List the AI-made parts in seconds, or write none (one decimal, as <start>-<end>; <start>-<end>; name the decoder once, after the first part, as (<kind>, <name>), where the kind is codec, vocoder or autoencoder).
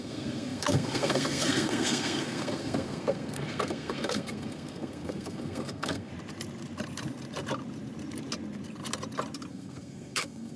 0.0-6.1 (codec, SNAC); 9.5-10.6